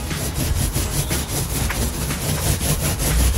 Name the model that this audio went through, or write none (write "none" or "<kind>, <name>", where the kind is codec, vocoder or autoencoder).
vocoder, BigVGAN v2